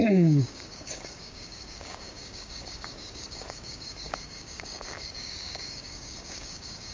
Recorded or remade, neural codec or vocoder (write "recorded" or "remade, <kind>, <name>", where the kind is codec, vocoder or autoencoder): remade, codec, DAC